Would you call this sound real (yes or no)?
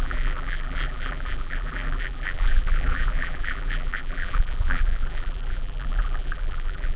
no